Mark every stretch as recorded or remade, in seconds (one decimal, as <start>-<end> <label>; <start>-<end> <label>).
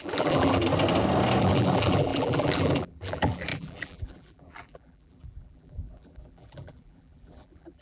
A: 0.0-0.6 remade; 0.6-1.4 recorded; 1.4-7.8 remade